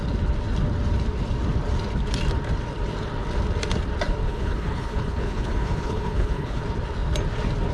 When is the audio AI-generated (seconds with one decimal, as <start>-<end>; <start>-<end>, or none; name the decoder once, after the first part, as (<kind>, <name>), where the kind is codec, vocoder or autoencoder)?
4.2-6.6 (codec, HILCodec)